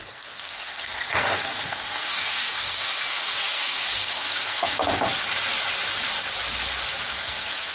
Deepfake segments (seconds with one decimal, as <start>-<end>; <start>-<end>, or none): 0.0-4.9; 7.2-7.7